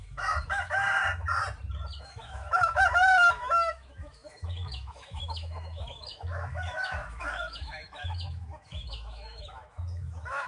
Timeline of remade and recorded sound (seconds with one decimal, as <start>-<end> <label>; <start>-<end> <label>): 0.0-1.0 remade; 1.0-2.0 recorded; 2.0-10.5 remade